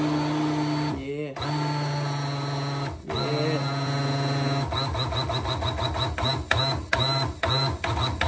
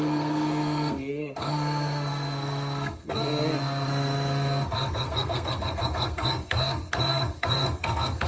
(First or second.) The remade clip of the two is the second